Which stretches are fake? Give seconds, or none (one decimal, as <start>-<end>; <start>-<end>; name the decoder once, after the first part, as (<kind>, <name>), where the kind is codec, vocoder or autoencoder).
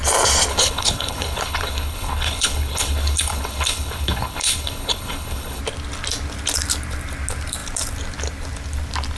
0.5-5.6 (codec, HILCodec)